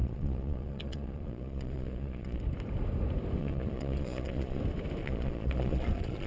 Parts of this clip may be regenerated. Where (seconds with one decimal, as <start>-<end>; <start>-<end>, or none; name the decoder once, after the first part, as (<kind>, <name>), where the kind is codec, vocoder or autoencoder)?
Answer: 0.0-2.4 (vocoder, Vocos); 3.4-4.6; 5.0-6.3